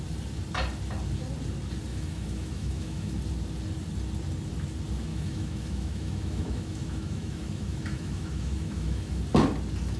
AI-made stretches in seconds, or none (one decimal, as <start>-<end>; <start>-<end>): 1.9-3.2; 5.1-9.2

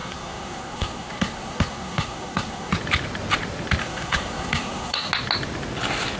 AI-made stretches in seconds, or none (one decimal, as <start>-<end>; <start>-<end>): 0.0-2.7; 3.8-5.1

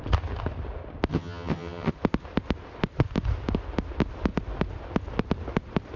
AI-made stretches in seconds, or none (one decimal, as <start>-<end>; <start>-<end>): 1.1-1.9